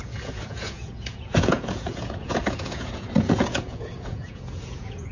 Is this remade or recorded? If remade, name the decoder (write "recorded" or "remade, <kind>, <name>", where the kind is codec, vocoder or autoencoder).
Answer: remade, vocoder, Vocos